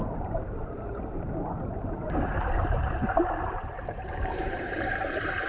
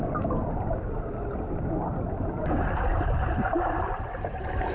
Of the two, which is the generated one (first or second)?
first